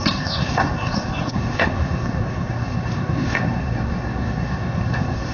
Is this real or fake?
fake